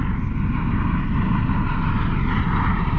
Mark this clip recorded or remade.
recorded